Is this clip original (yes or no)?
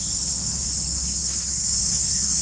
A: no